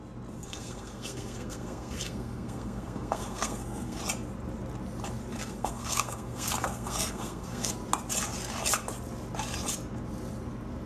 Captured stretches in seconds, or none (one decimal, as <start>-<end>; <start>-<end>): 0.0-0.4; 4.0-5.4; 7.7-10.9